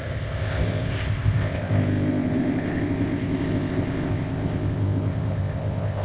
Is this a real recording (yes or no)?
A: no